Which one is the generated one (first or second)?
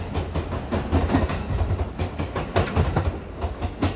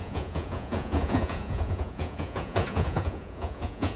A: second